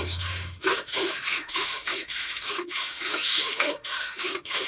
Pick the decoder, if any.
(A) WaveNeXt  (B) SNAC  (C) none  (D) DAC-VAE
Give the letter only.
D